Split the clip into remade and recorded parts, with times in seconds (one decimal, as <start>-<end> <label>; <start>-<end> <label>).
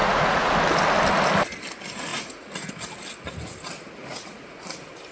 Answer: 0.0-0.5 remade; 0.5-2.1 recorded; 2.1-2.7 remade; 2.7-4.0 recorded; 4.0-4.6 remade; 4.6-5.1 recorded